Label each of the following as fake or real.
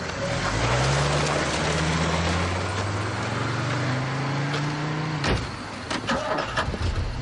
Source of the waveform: real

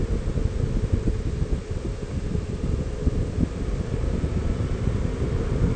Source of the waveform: real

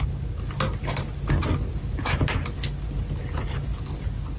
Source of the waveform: real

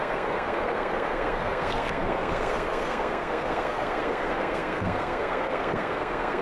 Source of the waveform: fake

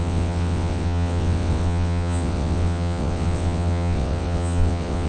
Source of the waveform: fake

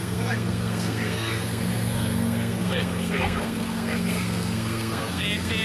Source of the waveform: fake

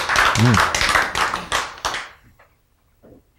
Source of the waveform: real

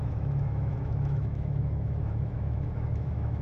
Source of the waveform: fake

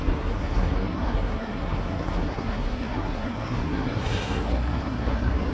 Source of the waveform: fake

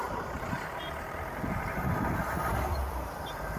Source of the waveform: fake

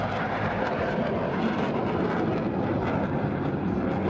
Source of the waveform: real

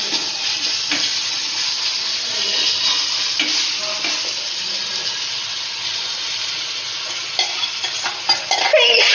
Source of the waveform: real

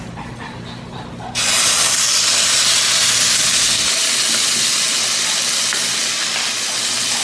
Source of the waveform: real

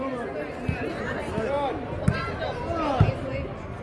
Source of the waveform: real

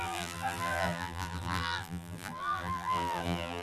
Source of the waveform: fake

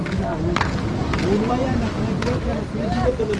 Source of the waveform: real